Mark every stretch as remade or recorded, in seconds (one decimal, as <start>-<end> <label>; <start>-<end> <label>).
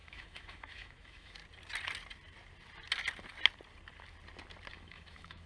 0.0-1.4 remade; 1.4-4.7 recorded; 4.7-5.5 remade